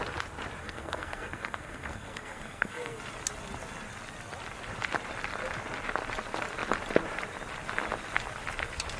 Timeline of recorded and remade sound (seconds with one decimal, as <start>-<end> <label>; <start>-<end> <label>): 0.0-0.6 recorded; 0.6-3.0 remade; 3.0-9.0 recorded